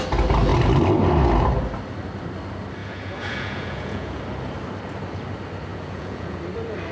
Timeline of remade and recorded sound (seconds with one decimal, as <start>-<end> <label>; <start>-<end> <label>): 0.0-2.8 recorded; 2.8-4.2 remade; 4.2-5.7 recorded; 5.7-6.4 remade; 6.4-6.9 recorded